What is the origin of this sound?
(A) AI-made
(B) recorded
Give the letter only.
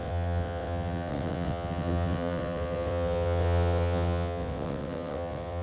A